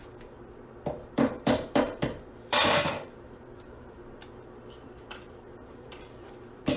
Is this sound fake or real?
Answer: fake